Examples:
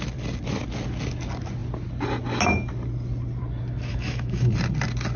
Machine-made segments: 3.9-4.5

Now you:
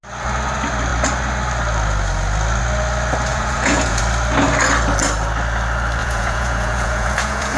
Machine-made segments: 3.3-4.0; 6.0-7.6

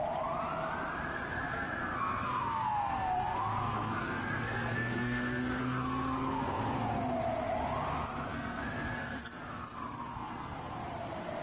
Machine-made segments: 1.4-6.6; 8.3-9.4; 10.1-10.7

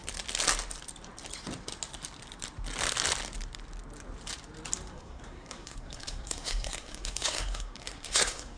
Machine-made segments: 4.9-8.6

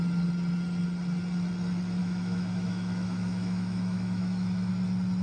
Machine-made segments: 2.0-4.7

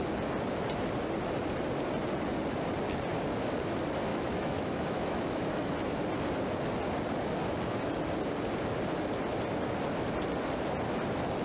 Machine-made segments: 4.1-5.7